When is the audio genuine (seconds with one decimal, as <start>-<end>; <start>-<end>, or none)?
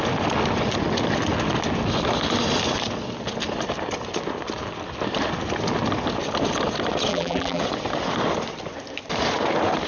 0.0-7.1; 7.6-9.9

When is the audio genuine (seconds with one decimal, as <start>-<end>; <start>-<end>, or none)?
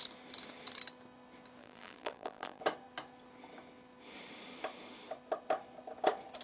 0.0-1.6; 2.6-6.4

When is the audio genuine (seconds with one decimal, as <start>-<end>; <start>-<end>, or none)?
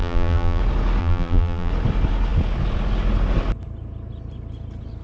0.6-1.0; 1.7-5.0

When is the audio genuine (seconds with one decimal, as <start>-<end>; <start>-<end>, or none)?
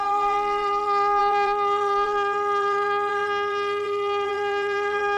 none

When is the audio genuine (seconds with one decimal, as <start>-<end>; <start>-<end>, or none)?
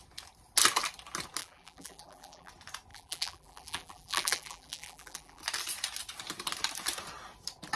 0.0-1.4; 2.5-2.9; 5.4-7.8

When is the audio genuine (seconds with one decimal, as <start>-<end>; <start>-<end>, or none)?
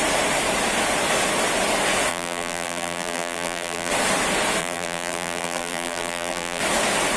0.0-2.1; 3.9-4.6; 6.6-7.2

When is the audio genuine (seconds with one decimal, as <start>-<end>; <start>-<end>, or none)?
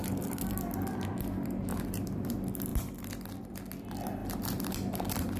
1.0-1.7; 2.3-4.2